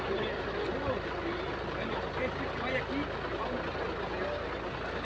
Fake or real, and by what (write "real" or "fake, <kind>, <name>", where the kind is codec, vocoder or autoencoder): real